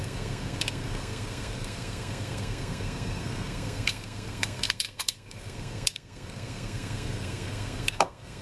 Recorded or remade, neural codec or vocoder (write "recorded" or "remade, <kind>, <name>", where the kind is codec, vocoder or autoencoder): remade, codec, SNAC